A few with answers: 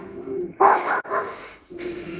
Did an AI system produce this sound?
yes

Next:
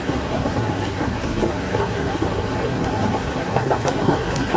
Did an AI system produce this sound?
yes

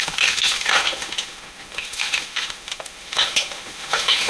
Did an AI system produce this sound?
yes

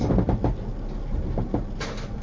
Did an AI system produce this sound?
no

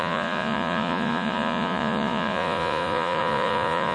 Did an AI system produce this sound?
yes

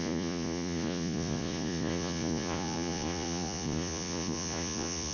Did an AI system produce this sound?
yes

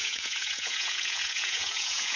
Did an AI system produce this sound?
yes